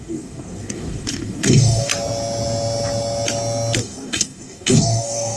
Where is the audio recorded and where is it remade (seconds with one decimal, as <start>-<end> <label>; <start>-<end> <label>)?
0.0-1.9 remade; 1.9-3.8 recorded; 3.8-5.4 remade